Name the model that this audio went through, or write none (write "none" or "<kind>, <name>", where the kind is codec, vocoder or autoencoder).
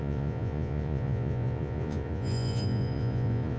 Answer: vocoder, Vocos